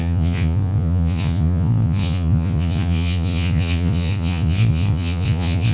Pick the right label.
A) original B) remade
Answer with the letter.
B